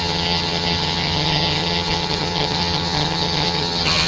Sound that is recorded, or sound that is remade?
remade